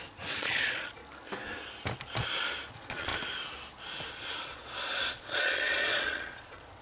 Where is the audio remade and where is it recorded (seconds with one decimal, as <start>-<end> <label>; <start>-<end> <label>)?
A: 0.0-1.0 remade; 1.0-2.7 recorded; 2.7-3.1 remade; 3.1-4.1 recorded; 4.1-6.8 remade